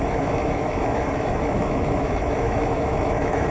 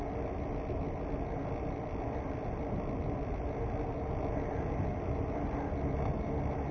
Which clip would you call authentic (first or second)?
second